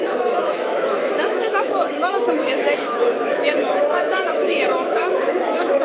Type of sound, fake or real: fake